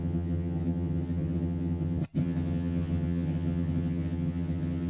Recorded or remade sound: remade